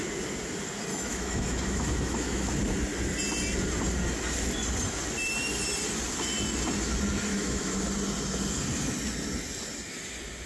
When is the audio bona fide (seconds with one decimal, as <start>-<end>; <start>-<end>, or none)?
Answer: 0.0-0.9; 2.5-7.3; 7.8-10.5